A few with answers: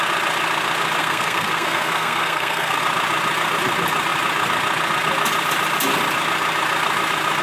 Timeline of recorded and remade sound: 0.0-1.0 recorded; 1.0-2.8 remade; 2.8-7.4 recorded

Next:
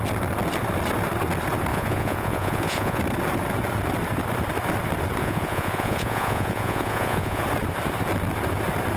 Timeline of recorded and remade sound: 0.0-1.7 recorded; 1.7-3.0 remade; 3.0-5.2 recorded; 5.2-7.4 remade; 7.4-9.0 recorded

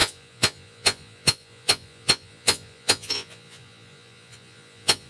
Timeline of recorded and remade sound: 0.0-5.1 remade

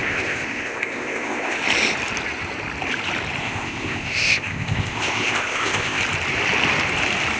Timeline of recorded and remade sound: 0.0-1.6 remade; 1.6-3.4 recorded; 3.4-6.0 remade; 6.0-7.4 recorded

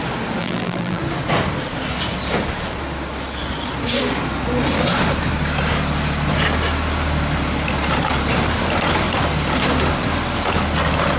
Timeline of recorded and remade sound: 0.0-0.4 recorded; 0.4-1.0 remade; 1.0-11.2 recorded